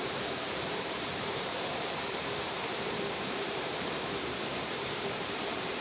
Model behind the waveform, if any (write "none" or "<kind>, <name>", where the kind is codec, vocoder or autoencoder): vocoder, BigVGAN v2